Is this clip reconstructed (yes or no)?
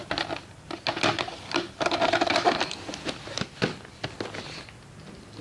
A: no